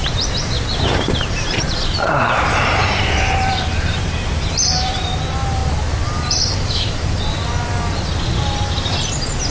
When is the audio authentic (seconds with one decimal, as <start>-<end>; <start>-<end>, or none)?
5.6-9.5